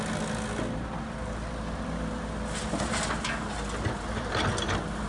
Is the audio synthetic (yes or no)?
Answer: no